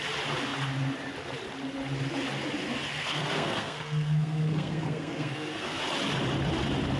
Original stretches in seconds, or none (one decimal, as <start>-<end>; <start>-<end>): 0.0-3.0; 5.8-7.0